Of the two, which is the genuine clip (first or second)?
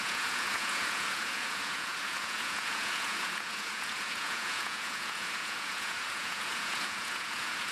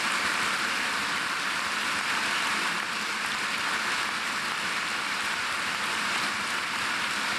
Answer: second